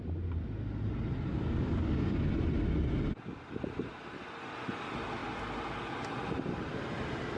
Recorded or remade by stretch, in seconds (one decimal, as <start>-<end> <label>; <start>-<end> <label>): 0.0-1.3 recorded; 1.3-2.2 remade; 2.2-7.4 recorded